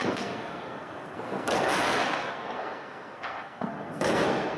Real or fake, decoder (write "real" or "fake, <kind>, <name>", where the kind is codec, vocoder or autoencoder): fake, codec, SNAC